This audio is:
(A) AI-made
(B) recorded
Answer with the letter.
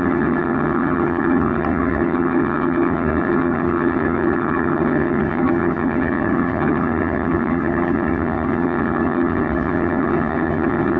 A